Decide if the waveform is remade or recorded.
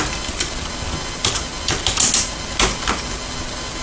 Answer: recorded